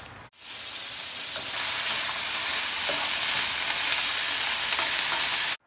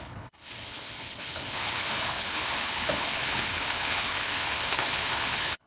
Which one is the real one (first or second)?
first